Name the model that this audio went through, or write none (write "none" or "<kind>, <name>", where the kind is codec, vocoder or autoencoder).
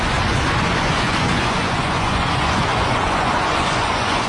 vocoder, Vocos